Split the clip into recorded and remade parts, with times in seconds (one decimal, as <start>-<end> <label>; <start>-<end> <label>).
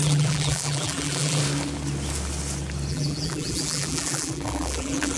0.0-1.4 remade; 1.4-2.9 recorded; 2.9-5.2 remade